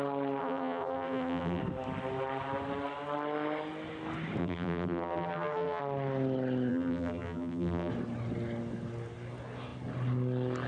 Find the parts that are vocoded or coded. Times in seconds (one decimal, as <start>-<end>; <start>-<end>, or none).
0.4-1.6; 4.4-5.8; 6.7-7.9